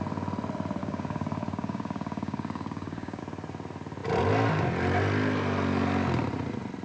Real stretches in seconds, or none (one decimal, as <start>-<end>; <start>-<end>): 0.0-0.8; 3.2-6.8